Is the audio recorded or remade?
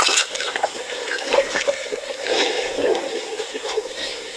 remade